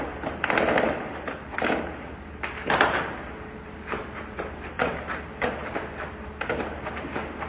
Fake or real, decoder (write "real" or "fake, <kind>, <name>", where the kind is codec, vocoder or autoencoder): real